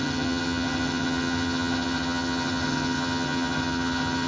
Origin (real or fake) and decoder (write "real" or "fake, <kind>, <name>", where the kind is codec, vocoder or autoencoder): fake, vocoder, HiFi-GAN